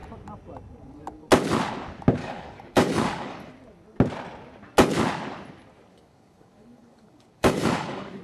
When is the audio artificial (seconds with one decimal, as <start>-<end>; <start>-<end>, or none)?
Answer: 2.2-3.5; 5.9-8.2